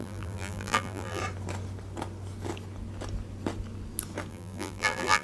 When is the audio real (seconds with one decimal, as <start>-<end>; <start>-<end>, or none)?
1.2-4.3